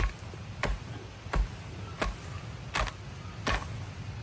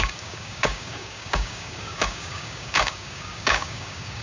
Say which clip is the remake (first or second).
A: second